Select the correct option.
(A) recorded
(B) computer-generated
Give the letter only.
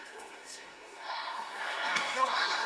B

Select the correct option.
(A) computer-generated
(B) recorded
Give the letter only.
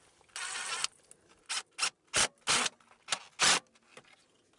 B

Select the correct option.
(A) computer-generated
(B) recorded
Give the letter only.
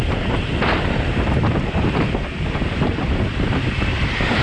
A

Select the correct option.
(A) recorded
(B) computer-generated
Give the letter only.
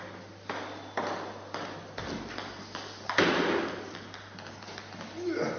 A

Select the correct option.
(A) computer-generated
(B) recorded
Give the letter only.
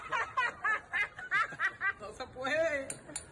B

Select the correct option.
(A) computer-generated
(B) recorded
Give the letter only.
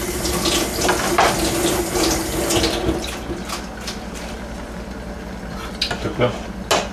B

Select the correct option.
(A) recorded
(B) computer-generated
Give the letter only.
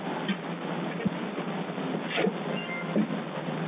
A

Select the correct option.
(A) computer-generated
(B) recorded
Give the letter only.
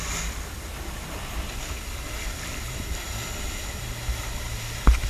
B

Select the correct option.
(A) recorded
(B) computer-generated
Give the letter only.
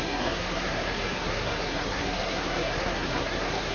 B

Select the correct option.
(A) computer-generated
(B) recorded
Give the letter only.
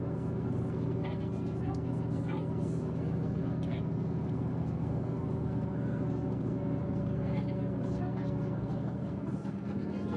A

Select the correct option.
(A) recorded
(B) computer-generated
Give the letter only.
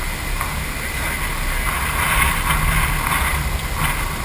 A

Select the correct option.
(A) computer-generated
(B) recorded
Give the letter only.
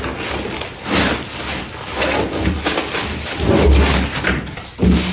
B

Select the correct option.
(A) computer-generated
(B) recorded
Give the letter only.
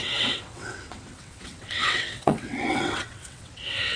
A